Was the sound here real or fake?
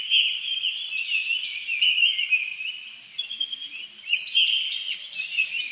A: real